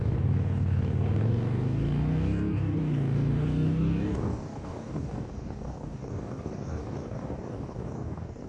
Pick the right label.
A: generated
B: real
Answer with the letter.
A